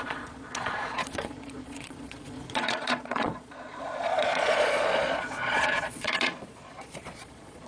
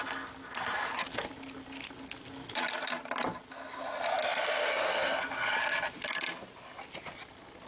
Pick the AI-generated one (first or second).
first